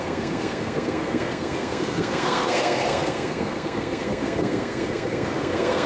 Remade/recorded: remade